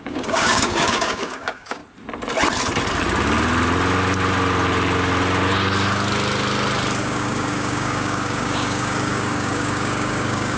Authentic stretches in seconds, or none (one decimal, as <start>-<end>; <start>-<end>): 1.8-7.0